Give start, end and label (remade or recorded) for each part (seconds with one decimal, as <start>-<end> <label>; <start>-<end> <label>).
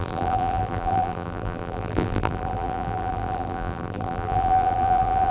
0.0-5.3 remade